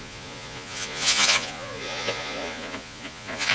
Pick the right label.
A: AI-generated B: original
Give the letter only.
A